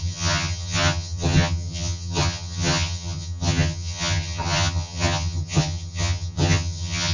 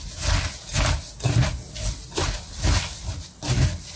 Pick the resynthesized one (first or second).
first